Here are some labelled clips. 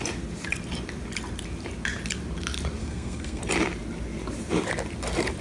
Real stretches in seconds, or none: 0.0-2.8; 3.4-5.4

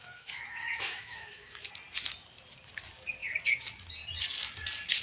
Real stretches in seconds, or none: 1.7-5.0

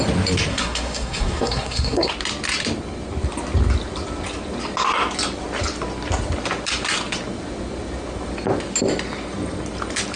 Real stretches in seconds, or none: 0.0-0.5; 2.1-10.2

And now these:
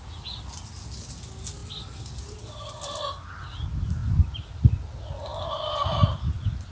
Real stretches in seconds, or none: 0.0-6.7

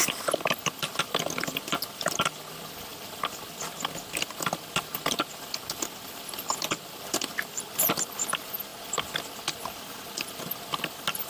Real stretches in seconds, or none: 0.0-11.3

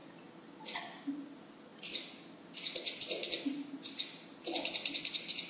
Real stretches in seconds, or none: 0.0-5.5

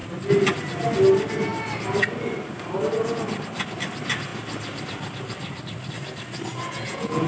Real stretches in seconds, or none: 0.0-6.5

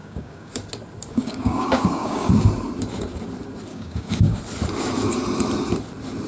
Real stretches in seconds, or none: 0.5-1.1; 2.3-3.7; 4.4-6.3